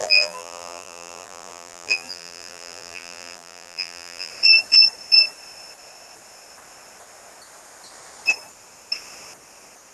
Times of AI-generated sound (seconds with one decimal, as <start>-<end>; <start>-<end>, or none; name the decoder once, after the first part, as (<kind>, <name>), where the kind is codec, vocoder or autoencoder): 0.0-4.3 (vocoder, BigVGAN v2)